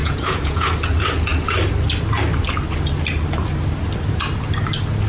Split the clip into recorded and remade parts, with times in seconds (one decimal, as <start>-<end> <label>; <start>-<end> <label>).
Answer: 0.0-0.7 remade; 0.7-5.1 recorded